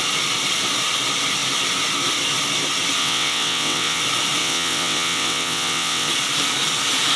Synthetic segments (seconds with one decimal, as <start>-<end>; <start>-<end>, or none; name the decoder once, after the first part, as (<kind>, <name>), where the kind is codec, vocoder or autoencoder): 3.0-4.0 (vocoder, WaveNeXt); 4.4-6.1